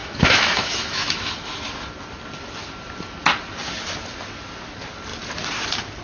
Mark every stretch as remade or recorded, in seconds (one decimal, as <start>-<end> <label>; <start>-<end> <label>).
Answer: 0.0-1.3 remade; 1.3-6.0 recorded